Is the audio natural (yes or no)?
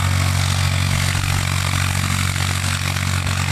no